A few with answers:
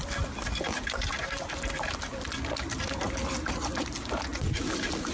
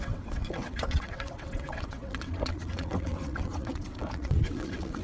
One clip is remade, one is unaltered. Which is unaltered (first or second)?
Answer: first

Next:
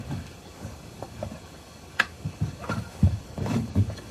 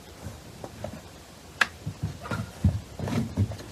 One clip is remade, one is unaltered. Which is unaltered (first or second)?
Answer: second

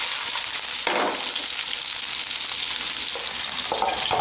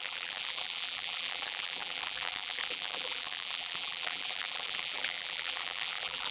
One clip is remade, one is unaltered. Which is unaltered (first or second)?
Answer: first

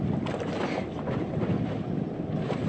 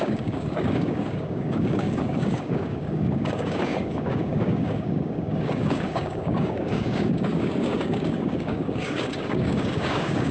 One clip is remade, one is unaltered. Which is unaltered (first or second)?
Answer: first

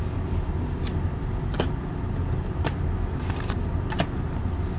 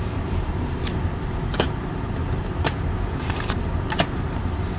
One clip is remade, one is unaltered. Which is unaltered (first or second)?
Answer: first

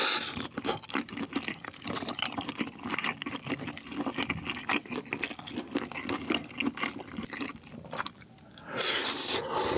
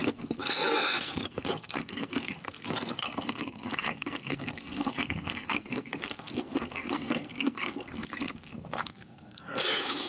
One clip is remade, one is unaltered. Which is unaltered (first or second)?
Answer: first